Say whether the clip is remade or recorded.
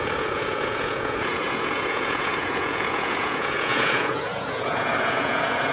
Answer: remade